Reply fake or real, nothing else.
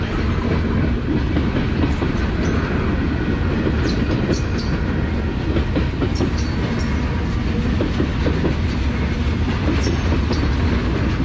real